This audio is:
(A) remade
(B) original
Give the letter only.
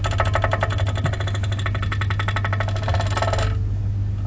B